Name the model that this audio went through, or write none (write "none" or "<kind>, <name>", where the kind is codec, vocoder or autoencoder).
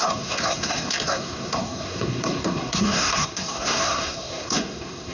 codec, SNAC